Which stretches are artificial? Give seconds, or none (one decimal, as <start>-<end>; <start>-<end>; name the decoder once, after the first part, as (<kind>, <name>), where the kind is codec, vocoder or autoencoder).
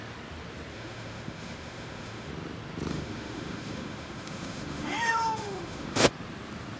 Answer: 0.7-2.3 (autoencoder, DAC-VAE); 2.9-6.1